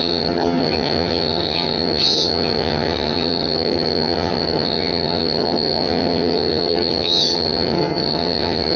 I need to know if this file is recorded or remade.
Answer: remade